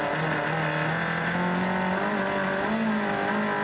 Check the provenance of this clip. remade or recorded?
recorded